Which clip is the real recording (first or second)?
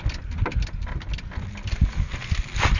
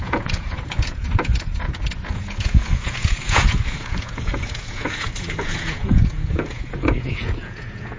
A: first